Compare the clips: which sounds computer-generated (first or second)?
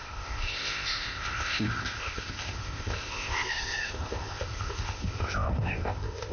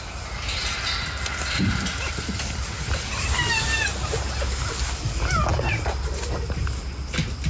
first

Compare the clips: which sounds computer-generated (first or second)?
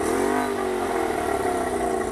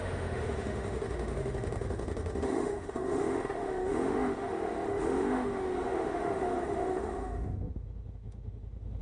second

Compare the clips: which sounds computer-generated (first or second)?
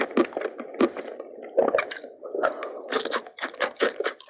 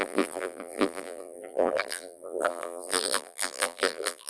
second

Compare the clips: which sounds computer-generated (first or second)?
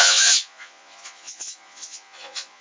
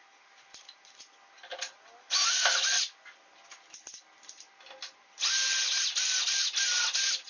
first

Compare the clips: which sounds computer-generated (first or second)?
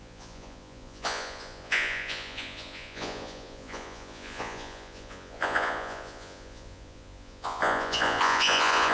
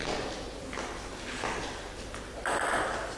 first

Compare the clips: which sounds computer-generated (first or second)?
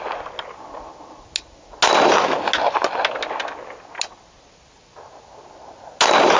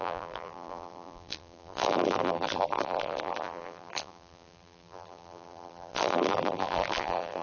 second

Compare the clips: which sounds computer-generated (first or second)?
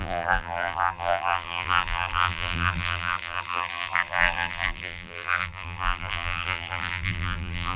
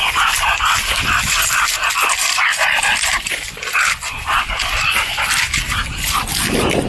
first